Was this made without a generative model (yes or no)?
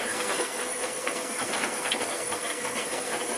no